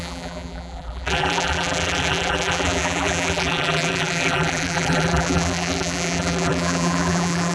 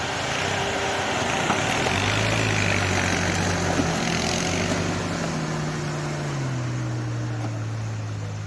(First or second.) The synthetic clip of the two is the first